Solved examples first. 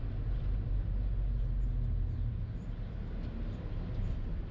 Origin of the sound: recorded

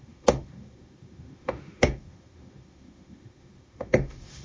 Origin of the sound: remade